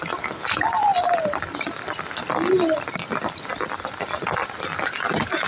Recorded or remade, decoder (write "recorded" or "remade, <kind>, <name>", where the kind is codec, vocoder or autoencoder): recorded